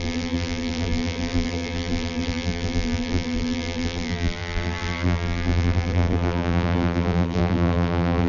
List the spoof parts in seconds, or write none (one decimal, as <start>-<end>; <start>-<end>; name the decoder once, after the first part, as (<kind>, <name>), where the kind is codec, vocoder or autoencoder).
0.0-8.3 (vocoder, BigVGAN v2)